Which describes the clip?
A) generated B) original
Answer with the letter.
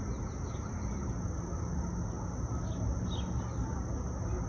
B